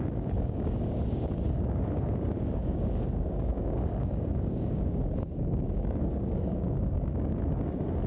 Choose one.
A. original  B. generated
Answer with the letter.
B